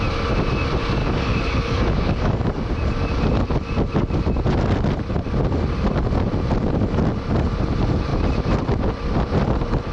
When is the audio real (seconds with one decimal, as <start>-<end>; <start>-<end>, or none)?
0.0-1.0; 2.6-9.9